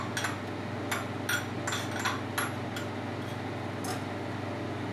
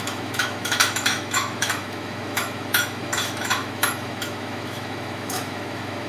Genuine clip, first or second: first